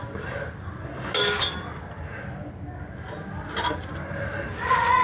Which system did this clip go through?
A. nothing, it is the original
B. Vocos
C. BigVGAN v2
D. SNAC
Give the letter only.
A